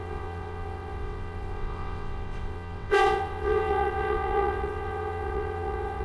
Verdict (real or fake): fake